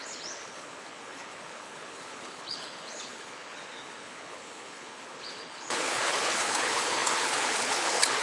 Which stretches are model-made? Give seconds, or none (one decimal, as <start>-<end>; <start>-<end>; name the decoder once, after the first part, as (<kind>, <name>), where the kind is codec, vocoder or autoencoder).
0.0-8.2 (codec, HILCodec)